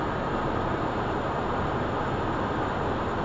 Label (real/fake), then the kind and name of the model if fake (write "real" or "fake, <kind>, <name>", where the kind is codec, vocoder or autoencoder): real